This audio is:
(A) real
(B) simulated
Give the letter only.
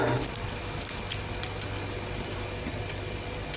A